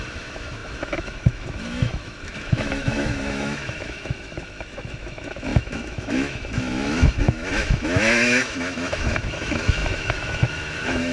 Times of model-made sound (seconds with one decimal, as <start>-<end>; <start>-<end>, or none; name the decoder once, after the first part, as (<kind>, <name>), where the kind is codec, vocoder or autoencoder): 0.0-11.1 (autoencoder, DAC-VAE)